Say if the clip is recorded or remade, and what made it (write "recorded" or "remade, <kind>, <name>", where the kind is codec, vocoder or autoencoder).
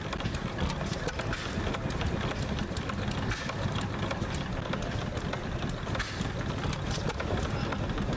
recorded